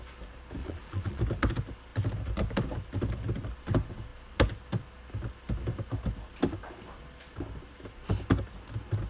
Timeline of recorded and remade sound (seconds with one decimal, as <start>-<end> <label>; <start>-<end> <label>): 0.0-0.6 recorded; 0.6-1.2 remade; 1.2-9.1 recorded